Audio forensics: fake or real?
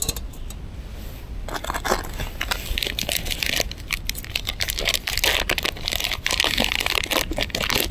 real